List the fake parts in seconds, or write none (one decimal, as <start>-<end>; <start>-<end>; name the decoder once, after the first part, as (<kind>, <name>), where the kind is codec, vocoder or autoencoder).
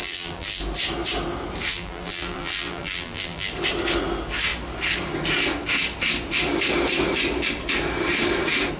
0.0-0.6 (vocoder, BigVGAN v2); 1.7-3.5